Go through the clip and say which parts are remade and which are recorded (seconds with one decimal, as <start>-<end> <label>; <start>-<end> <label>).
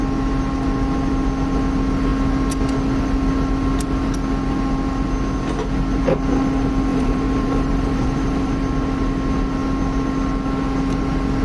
0.0-6.9 recorded; 6.9-8.5 remade; 8.5-11.4 recorded